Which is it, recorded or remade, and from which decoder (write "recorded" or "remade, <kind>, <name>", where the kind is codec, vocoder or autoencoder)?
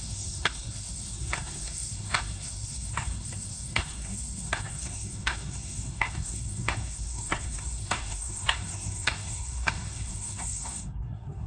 remade, codec, SNAC